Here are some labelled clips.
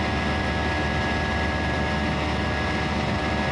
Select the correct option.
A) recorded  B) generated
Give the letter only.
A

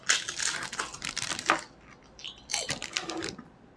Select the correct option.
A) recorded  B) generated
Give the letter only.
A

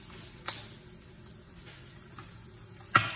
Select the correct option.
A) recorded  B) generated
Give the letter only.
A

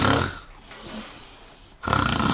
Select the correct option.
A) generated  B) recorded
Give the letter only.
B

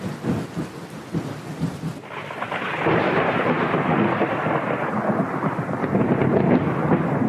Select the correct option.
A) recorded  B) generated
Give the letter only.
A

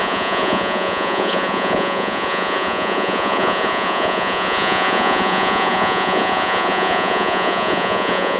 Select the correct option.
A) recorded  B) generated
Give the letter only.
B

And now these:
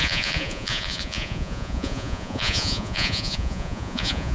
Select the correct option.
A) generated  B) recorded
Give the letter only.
A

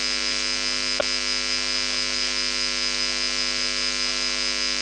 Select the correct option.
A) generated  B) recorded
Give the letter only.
B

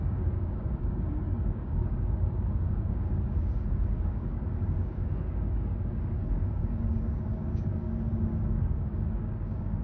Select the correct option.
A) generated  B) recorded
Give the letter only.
A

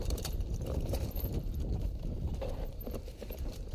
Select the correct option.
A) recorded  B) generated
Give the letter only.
B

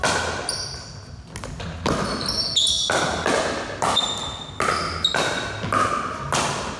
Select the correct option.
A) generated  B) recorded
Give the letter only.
B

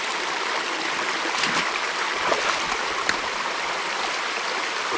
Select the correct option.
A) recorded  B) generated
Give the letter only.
A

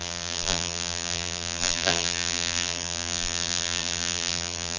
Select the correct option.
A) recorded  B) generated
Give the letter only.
B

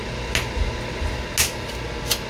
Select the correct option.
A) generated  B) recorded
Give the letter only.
B